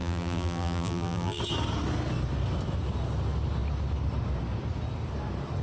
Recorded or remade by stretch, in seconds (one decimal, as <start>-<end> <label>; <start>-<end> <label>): 0.0-1.4 remade; 1.4-5.6 recorded